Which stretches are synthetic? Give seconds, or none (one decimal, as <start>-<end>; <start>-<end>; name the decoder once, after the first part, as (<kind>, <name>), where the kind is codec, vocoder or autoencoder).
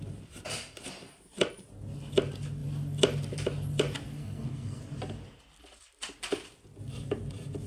4.2-4.8 (codec, SNAC)